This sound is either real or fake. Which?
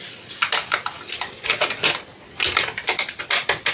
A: real